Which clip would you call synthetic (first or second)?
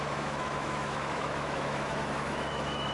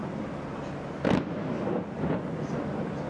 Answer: first